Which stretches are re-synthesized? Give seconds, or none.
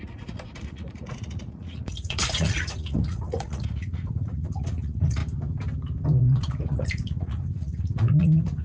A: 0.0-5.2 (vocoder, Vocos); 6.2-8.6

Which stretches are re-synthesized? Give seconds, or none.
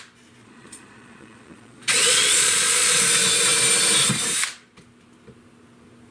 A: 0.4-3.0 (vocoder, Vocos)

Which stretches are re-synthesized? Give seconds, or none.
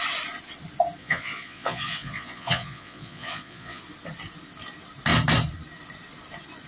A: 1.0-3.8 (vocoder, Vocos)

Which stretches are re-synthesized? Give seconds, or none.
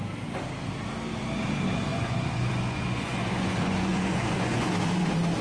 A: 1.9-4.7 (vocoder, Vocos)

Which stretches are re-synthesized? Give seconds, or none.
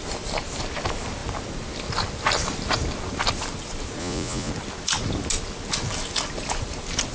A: 4.0-4.5 (vocoder, Vocos)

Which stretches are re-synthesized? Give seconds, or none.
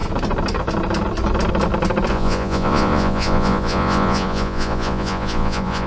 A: 2.1-5.9 (vocoder, Vocos)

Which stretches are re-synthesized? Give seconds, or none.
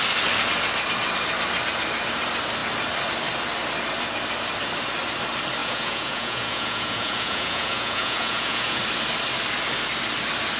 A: 5.6-8.8 (vocoder, Vocos)